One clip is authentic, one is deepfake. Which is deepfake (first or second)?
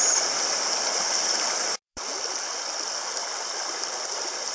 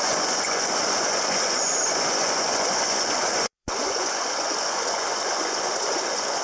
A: second